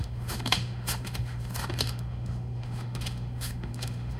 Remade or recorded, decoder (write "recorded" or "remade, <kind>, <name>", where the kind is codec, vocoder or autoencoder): remade, autoencoder, DAC-VAE